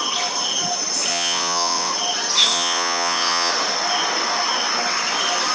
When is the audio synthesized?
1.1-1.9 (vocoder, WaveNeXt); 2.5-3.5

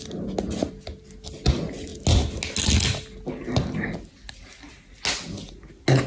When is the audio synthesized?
none

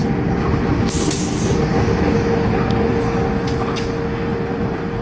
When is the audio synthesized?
4.3-5.0 (vocoder, BigVGAN v2)

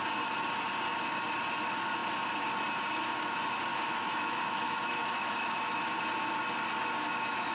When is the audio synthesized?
3.7-5.9 (autoencoder, DAC-VAE)

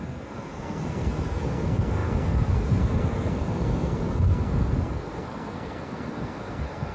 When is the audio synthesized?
0.0-6.9 (codec, SNAC)